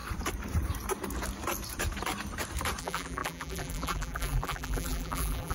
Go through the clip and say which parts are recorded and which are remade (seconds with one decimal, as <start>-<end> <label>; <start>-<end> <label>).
0.0-2.8 recorded; 2.8-5.5 remade